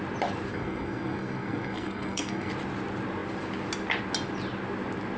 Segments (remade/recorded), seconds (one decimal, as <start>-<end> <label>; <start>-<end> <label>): 0.0-0.5 recorded; 0.5-2.5 remade; 2.5-5.2 recorded